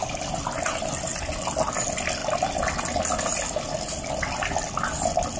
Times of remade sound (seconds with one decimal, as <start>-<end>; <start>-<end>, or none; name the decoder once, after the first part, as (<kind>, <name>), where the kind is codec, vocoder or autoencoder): none